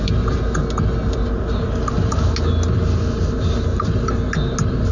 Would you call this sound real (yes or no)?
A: yes